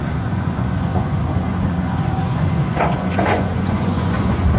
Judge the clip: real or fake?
fake